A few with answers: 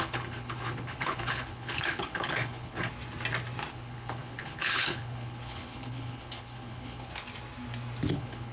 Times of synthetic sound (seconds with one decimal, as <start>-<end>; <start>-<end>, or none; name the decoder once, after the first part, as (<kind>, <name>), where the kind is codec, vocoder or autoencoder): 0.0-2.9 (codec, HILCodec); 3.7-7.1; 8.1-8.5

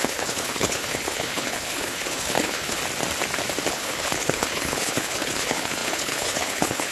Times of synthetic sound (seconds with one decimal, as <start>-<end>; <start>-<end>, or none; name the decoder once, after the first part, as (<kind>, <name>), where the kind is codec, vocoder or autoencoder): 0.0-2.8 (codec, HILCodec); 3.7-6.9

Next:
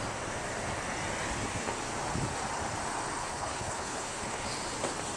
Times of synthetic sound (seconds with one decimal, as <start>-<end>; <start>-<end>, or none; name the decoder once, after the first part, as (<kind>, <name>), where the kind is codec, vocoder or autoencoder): 3.2-4.5 (codec, HILCodec)

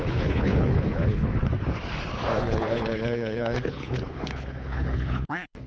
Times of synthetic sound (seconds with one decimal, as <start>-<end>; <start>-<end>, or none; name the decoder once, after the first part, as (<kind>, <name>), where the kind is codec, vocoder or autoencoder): 0.0-1.3 (codec, HILCodec); 2.4-5.7

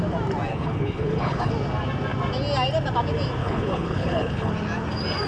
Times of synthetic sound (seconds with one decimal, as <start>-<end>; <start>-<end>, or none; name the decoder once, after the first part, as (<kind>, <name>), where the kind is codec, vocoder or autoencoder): 0.5-1.5 (codec, HILCodec); 3.4-4.5

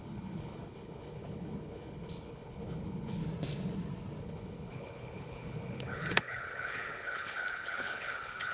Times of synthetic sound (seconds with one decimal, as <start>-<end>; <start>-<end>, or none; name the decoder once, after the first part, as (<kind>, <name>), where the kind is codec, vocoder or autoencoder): 0.0-3.2 (codec, HILCodec); 4.2-8.5

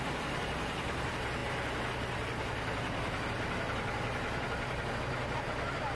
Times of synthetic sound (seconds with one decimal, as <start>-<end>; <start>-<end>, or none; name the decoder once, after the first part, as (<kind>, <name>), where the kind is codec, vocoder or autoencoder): none